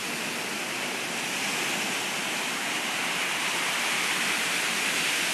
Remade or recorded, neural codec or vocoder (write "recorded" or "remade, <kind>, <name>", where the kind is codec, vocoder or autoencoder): recorded